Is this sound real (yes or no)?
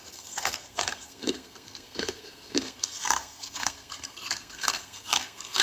no